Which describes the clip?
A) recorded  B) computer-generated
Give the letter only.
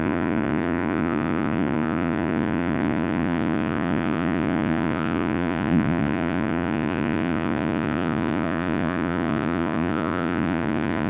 B